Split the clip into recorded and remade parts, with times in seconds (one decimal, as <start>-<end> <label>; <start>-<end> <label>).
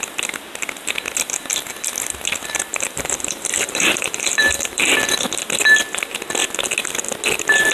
0.0-2.7 recorded; 2.7-4.8 remade; 4.8-7.7 recorded